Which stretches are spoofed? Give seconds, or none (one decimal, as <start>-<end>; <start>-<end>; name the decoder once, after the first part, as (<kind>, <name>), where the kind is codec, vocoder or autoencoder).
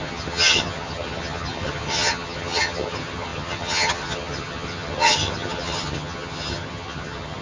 0.0-7.4 (vocoder, HiFi-GAN)